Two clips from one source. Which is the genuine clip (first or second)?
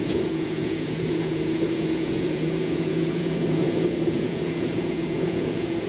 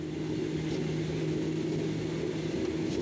second